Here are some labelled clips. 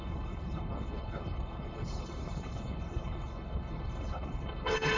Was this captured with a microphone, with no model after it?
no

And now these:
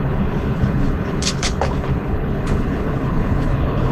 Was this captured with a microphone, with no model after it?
no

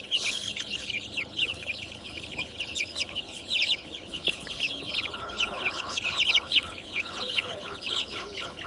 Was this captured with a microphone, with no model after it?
no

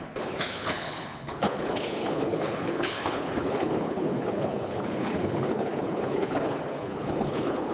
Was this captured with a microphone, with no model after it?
no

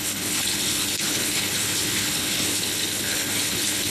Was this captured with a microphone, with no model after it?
no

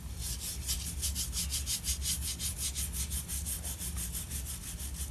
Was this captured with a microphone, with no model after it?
yes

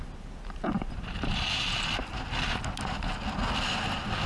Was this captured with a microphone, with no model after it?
yes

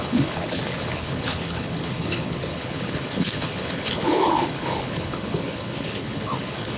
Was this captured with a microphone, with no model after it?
no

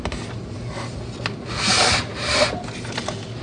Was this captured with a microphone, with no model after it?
yes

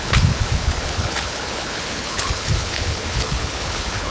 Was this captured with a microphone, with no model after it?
no